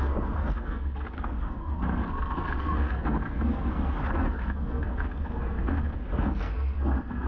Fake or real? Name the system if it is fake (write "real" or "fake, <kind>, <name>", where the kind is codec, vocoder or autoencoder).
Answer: fake, codec, SNAC